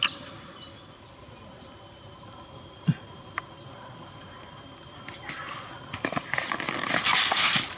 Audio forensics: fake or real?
real